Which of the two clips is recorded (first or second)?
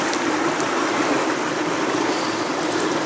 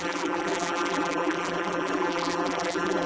first